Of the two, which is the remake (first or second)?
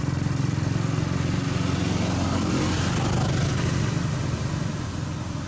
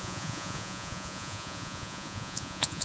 second